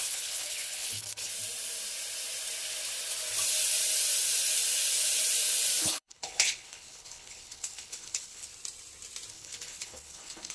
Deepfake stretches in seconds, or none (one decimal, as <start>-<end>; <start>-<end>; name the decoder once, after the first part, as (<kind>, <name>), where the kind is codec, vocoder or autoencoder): 0.0-1.3 (codec, HILCodec); 5.8-8.5; 9.3-10.5